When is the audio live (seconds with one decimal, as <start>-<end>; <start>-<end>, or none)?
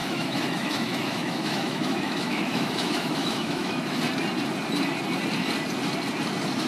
4.0-6.7